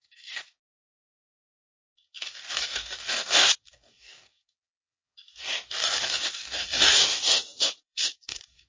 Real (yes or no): no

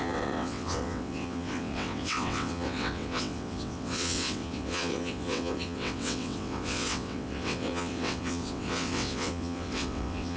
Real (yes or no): no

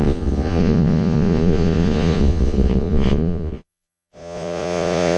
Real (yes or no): no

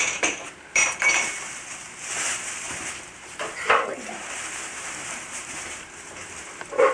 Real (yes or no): no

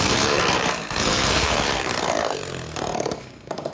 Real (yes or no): no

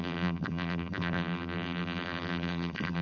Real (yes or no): no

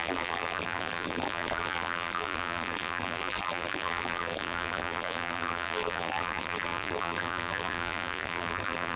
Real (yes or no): no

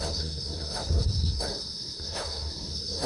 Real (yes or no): no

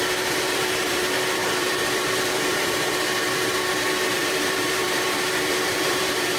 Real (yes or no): no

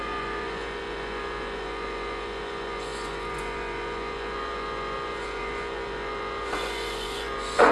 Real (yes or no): no